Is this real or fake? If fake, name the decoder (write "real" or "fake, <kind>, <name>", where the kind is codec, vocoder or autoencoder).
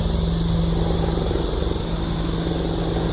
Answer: real